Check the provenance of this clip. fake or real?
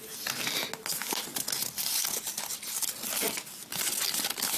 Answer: real